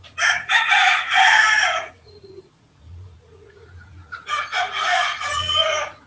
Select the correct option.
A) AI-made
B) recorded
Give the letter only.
A